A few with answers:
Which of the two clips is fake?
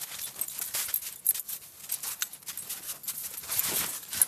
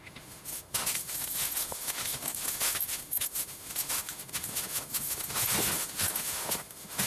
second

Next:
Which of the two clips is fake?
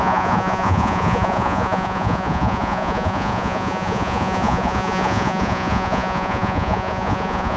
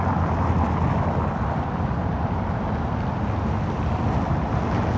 first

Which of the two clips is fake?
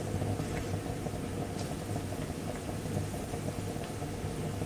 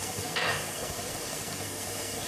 second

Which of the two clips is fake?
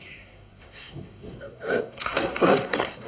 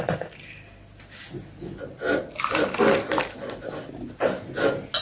first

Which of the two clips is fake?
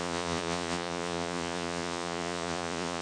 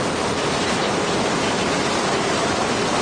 first